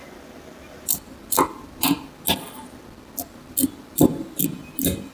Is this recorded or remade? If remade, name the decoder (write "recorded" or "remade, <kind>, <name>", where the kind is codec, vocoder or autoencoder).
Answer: recorded